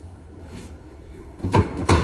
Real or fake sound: fake